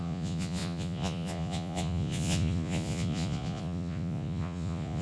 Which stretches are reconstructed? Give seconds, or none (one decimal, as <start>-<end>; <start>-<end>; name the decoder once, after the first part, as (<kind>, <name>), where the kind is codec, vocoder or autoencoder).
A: 0.0-5.0 (vocoder, Vocos)